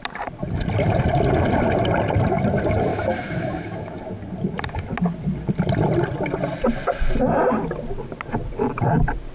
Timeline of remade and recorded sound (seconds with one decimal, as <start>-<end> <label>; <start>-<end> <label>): 0.0-2.9 recorded; 2.9-4.0 remade; 4.0-9.3 recorded